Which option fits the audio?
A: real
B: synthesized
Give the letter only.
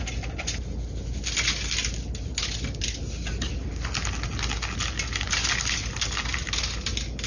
A